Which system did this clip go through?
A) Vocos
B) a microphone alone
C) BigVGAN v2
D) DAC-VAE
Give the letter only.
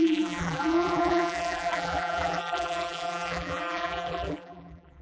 C